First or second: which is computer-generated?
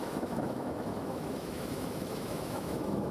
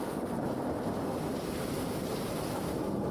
first